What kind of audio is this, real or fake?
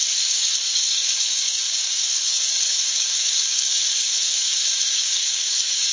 fake